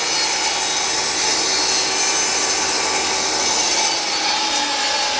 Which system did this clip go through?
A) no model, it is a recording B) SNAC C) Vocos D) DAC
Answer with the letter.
A